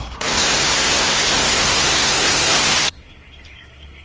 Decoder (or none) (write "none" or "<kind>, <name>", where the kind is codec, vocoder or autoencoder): codec, SNAC